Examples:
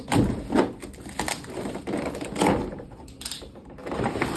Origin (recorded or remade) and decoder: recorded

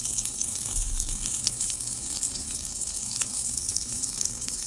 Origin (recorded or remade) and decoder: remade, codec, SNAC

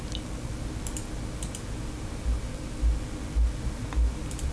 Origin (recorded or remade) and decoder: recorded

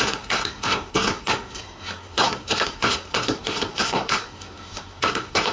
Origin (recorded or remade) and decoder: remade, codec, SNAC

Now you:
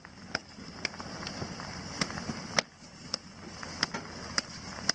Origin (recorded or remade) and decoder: recorded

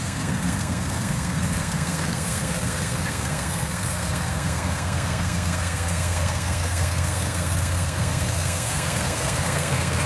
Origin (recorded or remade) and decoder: remade, codec, SNAC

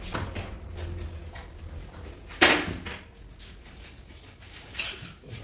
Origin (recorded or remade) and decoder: recorded